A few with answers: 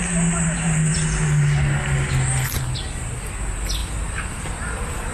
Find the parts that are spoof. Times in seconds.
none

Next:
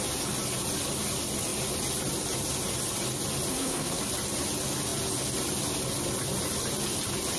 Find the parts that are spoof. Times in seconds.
3.5-4.0 (codec, SNAC)

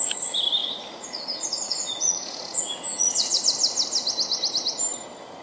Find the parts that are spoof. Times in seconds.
0.6-3.4 (vocoder, Vocos)

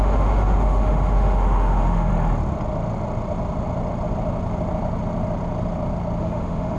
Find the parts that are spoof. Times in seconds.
0.0-2.1 (autoencoder, DAC-VAE); 6.2-6.8

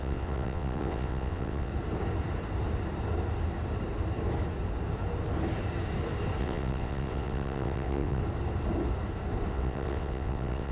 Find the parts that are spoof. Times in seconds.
0.0-1.7 (vocoder, WaveNeXt); 6.4-8.2; 9.5-10.7

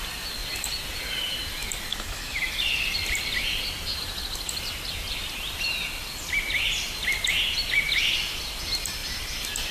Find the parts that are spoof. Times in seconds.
1.9-2.4 (autoencoder, DAC-VAE)

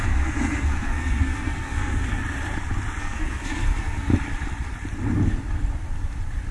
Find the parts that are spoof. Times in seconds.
0.0-2.2 (codec, SNAC); 3.0-4.1

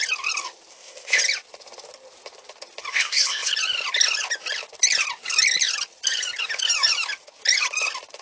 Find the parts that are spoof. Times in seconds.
0.7-1.2 (codec, ZipCodec); 2.9-3.5